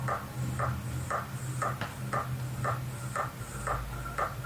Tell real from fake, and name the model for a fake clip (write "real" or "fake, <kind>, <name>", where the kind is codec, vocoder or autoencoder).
real